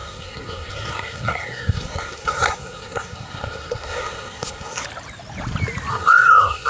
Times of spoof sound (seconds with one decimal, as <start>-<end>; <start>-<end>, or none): 0.0-4.8; 5.9-6.7